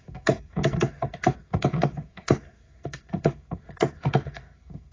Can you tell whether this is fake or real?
fake